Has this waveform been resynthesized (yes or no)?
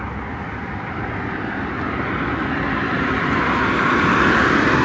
no